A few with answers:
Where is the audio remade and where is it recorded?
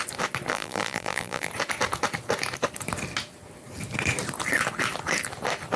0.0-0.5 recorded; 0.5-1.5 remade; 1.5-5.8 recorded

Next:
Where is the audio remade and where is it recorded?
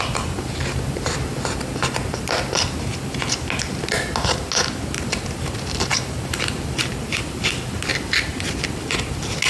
0.0-2.9 remade; 2.9-5.1 recorded; 5.1-5.9 remade; 5.9-6.8 recorded; 6.8-9.5 remade